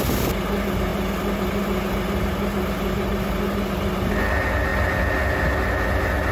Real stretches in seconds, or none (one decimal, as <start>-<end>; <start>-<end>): 0.0-6.3